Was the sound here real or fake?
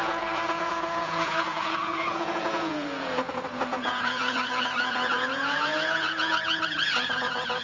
fake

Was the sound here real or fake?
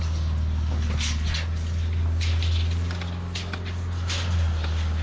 real